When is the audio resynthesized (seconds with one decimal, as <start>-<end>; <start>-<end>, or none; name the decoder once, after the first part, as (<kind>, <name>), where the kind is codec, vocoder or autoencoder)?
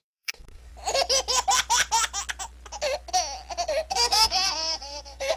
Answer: 0.0-0.7 (codec, SNAC); 3.9-5.4